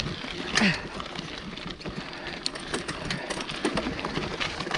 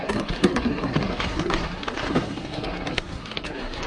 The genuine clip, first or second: first